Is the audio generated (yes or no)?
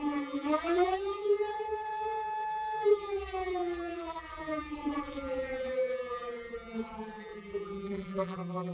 yes